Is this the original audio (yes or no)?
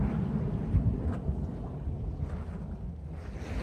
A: yes